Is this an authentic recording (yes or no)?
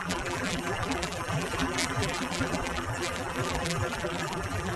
no